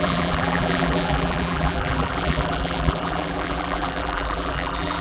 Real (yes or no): no